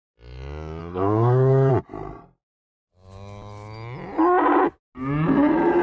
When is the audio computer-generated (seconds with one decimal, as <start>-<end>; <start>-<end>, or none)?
0.8-1.7